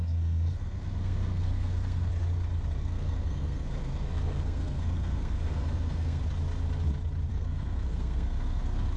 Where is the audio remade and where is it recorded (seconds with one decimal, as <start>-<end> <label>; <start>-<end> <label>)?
0.0-2.1 remade; 2.1-2.8 recorded; 2.8-6.2 remade; 6.2-7.3 recorded; 7.3-8.6 remade; 8.6-9.0 recorded